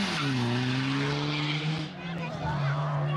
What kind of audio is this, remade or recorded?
recorded